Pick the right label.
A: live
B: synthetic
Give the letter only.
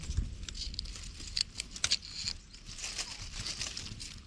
A